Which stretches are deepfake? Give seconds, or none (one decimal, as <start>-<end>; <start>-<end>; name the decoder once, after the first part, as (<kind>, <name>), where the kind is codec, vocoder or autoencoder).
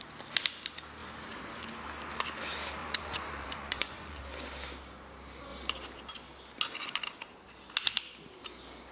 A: 2.8-4.2 (vocoder, Vocos)